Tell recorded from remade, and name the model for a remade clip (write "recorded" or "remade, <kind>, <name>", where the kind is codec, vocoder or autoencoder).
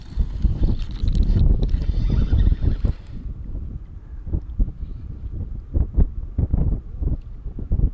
recorded